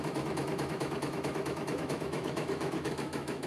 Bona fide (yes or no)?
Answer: no